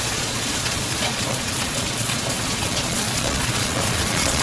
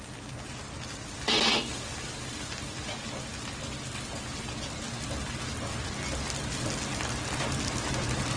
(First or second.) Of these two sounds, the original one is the second